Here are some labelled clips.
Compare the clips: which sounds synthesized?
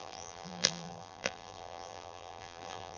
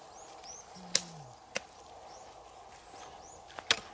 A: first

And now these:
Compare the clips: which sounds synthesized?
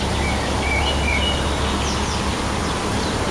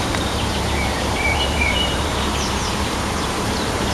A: second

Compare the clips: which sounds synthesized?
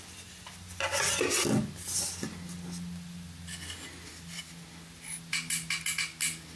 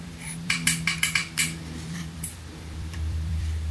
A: second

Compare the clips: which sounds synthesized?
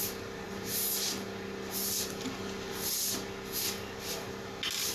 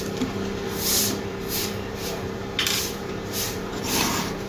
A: second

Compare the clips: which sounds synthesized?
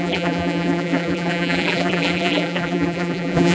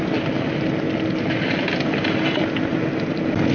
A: first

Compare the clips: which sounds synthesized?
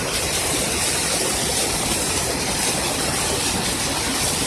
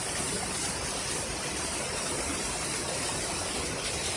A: second